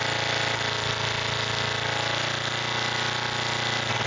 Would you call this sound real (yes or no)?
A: yes